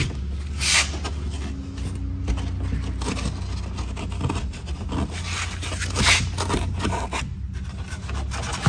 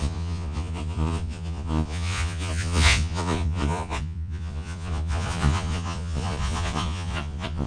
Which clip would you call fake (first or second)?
second